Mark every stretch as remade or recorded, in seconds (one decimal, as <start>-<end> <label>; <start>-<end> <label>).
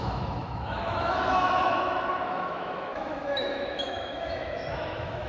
0.0-5.3 remade